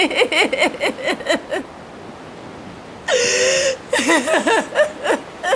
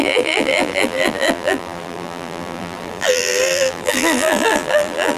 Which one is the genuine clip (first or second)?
first